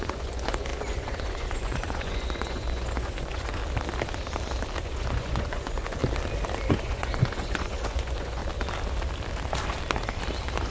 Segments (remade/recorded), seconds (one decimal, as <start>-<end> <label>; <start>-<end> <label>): 0.0-3.6 remade; 3.6-4.8 recorded; 4.8-6.0 remade; 6.0-6.7 recorded; 6.7-8.4 remade; 8.4-10.7 recorded